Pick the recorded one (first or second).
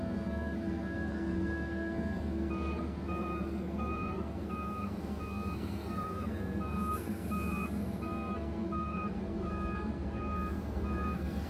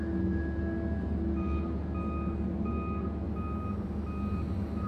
second